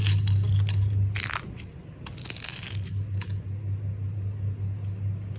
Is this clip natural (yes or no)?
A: yes